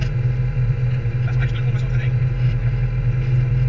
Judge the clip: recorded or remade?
recorded